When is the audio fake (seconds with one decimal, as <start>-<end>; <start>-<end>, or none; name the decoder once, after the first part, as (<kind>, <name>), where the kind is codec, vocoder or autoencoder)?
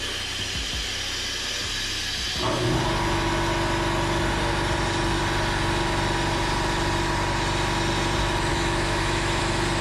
8.5-9.4 (autoencoder, DAC-VAE)